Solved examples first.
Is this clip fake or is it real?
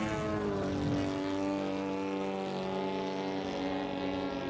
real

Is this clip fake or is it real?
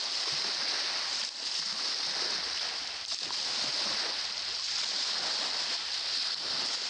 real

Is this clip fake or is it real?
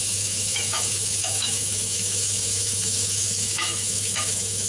fake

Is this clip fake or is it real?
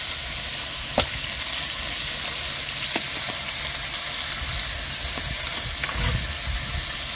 real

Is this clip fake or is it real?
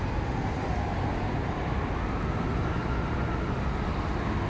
real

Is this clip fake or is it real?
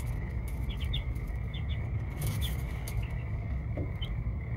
fake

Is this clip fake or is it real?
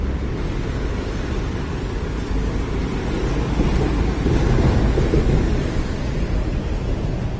real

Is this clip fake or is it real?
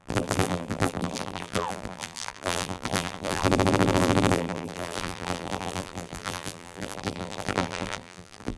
fake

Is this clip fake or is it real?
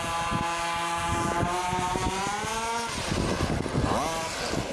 real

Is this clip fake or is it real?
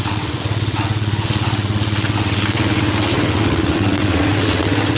fake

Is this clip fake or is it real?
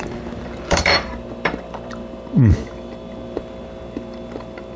fake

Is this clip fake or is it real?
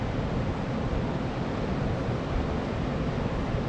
fake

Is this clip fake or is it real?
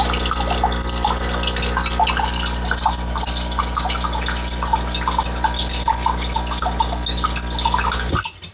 real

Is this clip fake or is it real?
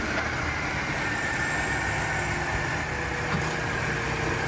real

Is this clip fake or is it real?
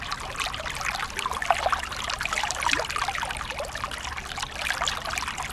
real